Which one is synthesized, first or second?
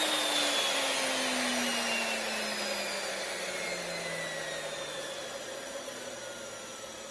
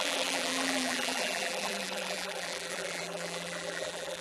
second